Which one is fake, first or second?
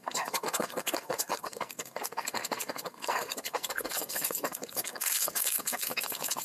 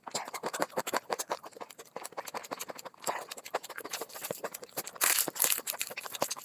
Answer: first